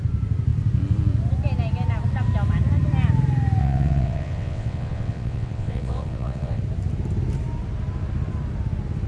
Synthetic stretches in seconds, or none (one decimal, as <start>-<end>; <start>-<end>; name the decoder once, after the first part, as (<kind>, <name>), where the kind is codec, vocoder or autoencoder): 3.6-6.6 (vocoder, WaveNeXt)